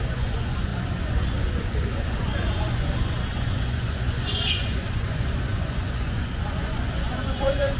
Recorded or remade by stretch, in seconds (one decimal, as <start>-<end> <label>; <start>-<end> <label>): 0.0-7.8 remade